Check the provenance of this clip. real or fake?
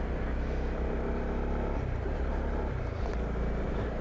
real